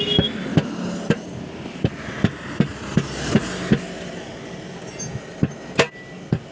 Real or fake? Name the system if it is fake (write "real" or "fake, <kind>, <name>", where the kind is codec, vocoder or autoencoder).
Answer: real